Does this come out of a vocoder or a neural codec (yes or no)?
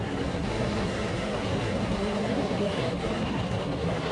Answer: yes